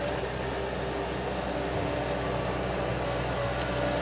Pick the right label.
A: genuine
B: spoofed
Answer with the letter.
A